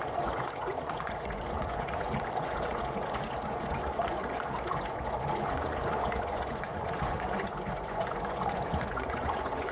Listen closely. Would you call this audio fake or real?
fake